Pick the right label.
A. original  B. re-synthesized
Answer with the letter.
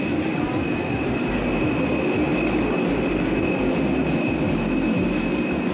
A